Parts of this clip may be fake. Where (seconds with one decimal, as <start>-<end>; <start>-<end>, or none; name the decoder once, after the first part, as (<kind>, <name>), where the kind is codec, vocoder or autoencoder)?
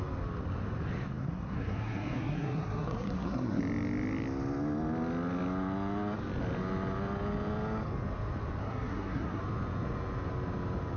1.2-3.6 (codec, SNAC); 8.6-9.4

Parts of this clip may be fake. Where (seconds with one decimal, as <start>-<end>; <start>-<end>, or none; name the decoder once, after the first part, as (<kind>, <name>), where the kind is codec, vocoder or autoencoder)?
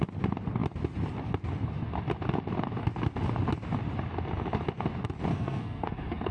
5.3-6.3 (codec, SNAC)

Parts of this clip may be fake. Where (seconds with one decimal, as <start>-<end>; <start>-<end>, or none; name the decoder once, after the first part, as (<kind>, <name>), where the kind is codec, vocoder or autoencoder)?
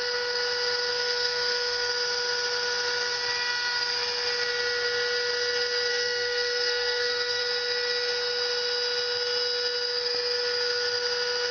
0.9-1.9 (codec, SNAC); 5.9-7.4